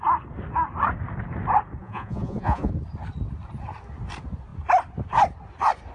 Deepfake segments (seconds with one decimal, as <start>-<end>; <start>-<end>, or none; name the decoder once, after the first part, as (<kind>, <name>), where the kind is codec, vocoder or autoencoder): 1.8-2.7 (vocoder, Vocos)